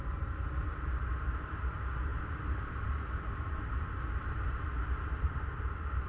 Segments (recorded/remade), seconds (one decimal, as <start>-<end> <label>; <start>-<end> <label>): 0.0-6.1 recorded